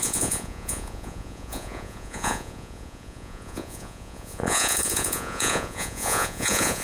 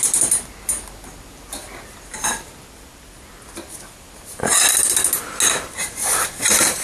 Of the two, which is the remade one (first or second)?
first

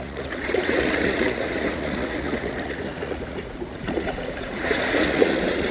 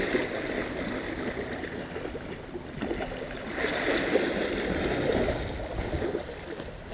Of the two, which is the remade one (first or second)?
first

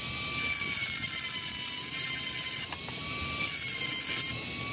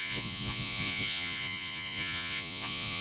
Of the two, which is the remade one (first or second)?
second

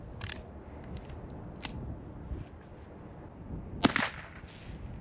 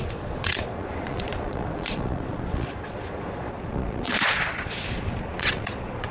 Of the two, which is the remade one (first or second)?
second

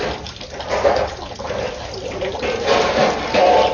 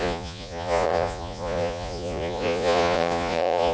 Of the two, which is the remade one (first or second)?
second